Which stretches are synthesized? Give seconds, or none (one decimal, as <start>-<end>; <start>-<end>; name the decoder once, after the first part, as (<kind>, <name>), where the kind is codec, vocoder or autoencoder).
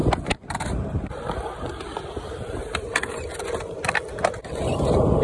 0.0-3.1 (vocoder, BigVGAN v2)